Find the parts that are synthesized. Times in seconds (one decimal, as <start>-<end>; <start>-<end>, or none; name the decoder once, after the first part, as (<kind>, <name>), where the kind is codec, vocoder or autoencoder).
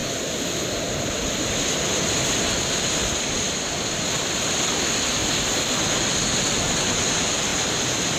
7.5-8.2 (vocoder, BigVGAN v2)